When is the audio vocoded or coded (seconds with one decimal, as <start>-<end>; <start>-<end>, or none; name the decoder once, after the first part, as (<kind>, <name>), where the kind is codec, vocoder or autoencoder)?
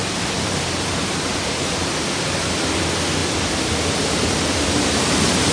1.3-1.9 (vocoder, BigVGAN v2)